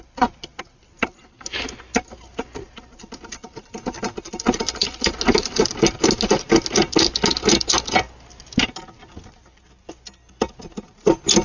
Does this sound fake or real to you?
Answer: real